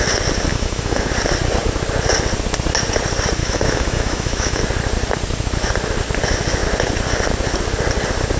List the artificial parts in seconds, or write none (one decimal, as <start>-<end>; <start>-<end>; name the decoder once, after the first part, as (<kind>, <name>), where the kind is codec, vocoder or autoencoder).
0.5-1.1 (autoencoder, DAC-VAE); 3.4-4.6